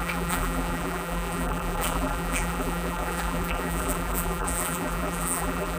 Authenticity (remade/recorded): remade